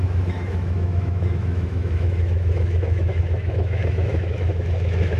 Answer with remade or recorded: remade